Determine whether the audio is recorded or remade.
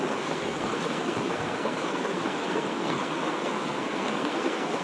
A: remade